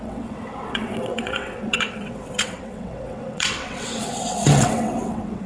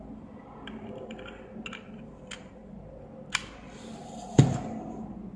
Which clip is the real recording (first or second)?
second